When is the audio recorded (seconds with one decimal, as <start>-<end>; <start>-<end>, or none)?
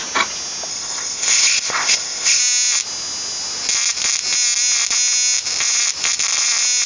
0.0-0.7; 2.4-6.9